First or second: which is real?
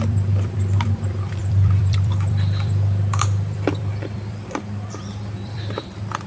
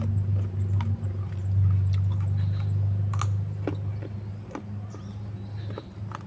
second